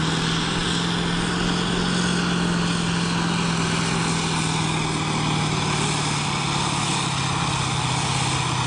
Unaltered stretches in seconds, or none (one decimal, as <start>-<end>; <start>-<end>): 0.0-8.7